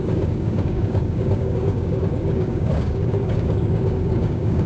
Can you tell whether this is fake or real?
fake